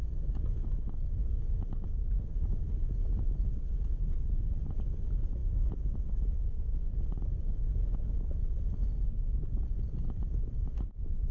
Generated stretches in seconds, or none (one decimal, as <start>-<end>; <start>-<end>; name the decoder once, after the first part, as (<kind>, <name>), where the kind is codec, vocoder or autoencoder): 0.6-4.7 (vocoder, BigVGAN v2)

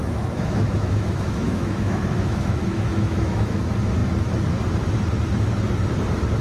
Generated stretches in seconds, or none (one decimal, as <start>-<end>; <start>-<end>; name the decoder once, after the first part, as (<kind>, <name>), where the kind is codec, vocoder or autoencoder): 0.0-3.6 (autoencoder, DAC-VAE)